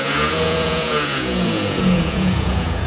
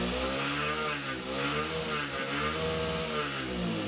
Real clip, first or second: second